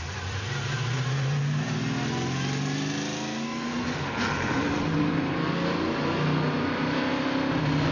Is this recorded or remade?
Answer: recorded